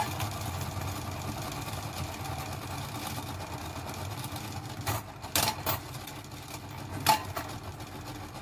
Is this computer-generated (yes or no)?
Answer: no